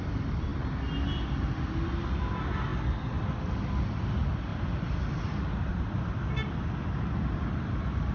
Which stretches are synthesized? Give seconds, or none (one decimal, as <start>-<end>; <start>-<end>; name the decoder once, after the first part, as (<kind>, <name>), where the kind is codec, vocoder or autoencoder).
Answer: none